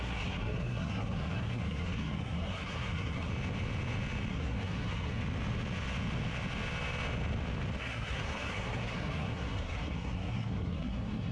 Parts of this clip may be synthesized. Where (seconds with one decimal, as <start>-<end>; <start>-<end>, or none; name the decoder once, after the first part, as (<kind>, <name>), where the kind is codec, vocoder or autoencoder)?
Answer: 0.0-3.3 (codec, SNAC); 4.3-5.2; 7.8-11.3